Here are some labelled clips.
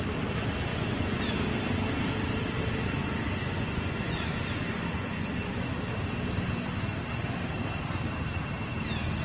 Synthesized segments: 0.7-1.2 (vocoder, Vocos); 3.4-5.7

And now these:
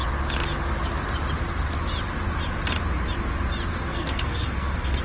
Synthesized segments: 3.9-5.0 (codec, SNAC)

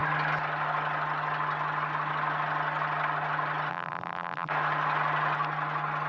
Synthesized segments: 3.7-4.5 (vocoder, BigVGAN v2)

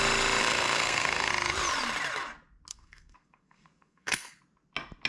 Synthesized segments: 0.4-1.3 (codec, SNAC); 2.7-4.4

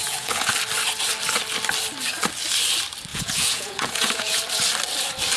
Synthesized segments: 0.0-0.5 (vocoder, Vocos); 3.1-4.4

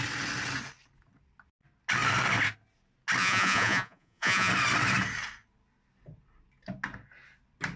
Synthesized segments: 3.2-4.5 (vocoder, Vocos)

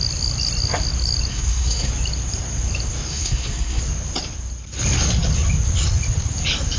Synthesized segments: 1.3-1.9 (codec, SNAC); 3.1-3.8